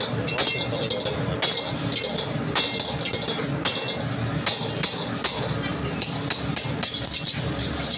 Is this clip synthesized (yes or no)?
no